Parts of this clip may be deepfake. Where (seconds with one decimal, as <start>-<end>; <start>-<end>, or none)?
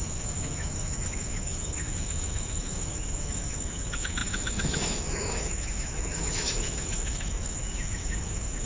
0.0-8.7